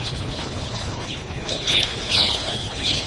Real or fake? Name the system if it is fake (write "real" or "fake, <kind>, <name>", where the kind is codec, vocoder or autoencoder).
fake, codec, HILCodec